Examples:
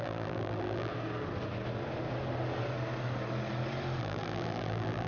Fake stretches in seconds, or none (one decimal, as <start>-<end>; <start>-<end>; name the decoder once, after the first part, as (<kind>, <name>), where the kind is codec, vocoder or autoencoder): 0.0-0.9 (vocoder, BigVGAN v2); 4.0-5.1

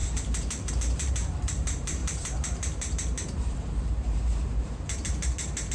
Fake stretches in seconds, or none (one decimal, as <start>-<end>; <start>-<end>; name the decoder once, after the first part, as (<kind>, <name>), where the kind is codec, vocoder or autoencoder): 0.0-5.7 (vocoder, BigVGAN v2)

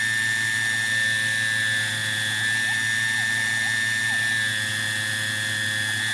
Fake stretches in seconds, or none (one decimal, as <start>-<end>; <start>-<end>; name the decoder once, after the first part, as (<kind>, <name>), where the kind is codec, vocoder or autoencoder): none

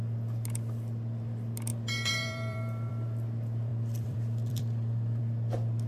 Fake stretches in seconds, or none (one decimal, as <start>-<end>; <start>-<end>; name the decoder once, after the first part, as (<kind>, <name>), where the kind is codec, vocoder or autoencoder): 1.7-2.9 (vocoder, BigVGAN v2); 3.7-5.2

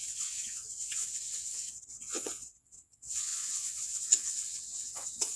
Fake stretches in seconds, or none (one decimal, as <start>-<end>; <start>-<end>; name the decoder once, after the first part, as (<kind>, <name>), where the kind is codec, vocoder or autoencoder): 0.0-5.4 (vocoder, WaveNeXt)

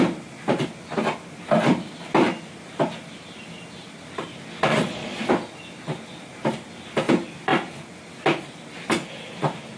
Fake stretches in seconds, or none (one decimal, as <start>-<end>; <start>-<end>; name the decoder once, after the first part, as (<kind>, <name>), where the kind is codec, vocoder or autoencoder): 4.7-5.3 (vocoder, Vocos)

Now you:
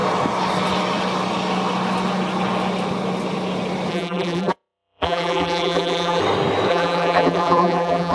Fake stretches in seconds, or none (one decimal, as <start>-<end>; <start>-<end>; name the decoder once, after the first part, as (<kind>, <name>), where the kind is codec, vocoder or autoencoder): 3.9-6.2 (vocoder, BigVGAN v2); 6.7-8.1